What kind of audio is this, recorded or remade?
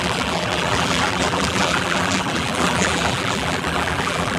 remade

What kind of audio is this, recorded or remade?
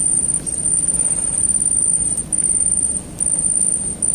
recorded